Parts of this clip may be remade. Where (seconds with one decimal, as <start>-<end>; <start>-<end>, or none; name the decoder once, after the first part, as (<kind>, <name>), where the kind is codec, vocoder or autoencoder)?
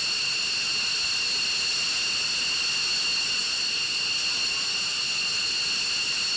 none